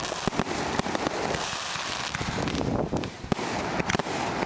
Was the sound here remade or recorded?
remade